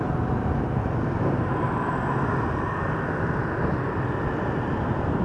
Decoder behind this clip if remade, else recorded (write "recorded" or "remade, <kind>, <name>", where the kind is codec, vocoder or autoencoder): recorded